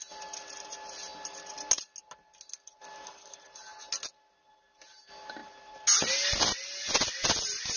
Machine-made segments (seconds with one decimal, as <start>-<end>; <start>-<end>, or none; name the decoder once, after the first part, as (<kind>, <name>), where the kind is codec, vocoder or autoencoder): none